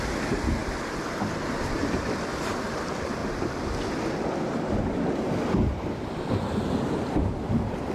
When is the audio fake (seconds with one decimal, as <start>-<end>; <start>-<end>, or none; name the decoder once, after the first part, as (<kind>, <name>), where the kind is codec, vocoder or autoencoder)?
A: none